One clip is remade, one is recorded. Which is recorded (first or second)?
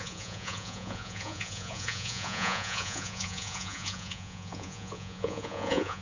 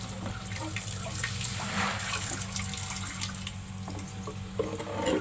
second